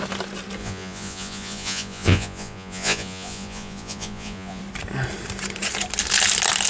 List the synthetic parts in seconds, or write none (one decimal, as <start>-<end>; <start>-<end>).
0.6-4.6

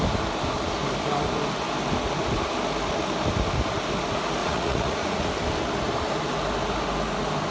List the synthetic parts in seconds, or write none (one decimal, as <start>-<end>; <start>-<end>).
4.4-5.3